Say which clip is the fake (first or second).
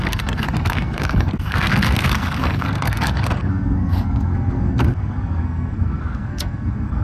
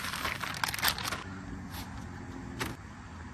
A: first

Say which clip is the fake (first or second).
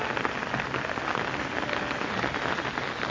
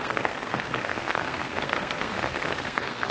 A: second